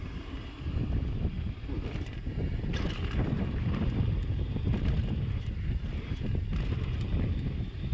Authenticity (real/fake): real